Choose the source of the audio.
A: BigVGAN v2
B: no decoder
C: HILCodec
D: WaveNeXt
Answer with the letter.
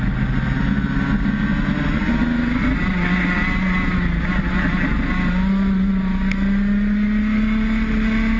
B